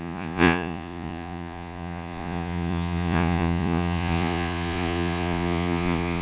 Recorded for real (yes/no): no